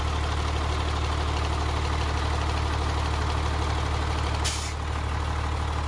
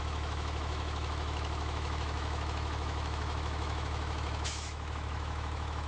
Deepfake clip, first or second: second